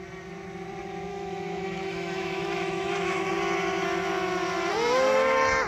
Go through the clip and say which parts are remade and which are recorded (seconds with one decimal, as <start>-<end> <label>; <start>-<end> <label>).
0.0-1.1 recorded; 1.1-3.3 remade; 3.3-5.7 recorded